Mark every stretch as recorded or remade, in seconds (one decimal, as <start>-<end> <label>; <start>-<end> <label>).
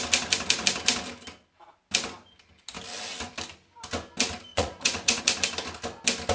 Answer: 0.0-4.5 recorded; 4.5-5.2 remade; 5.2-6.3 recorded